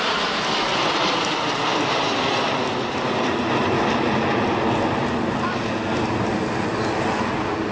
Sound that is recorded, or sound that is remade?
recorded